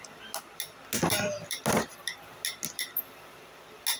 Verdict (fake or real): real